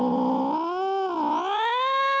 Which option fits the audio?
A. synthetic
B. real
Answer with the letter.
B